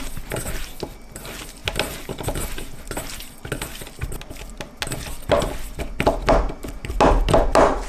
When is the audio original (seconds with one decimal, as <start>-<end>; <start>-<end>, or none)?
0.0-7.9